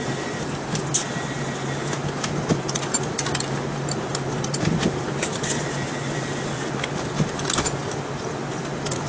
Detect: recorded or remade recorded